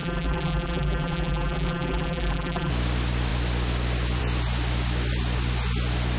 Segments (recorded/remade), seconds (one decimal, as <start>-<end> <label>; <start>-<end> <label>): 0.0-2.7 remade; 2.7-6.2 recorded